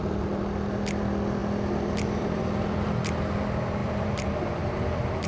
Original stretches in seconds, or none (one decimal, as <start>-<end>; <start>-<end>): 0.0-3.8; 4.3-5.3